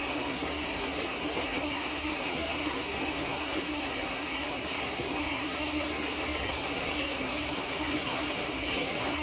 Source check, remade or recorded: remade